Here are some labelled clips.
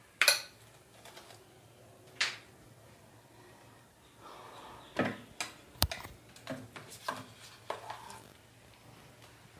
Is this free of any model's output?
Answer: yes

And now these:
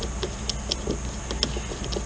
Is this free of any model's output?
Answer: yes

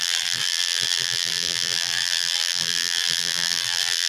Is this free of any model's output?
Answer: no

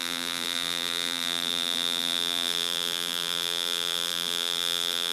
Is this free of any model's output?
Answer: no